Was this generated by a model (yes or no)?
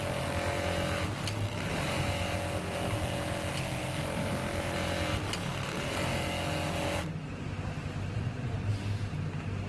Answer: no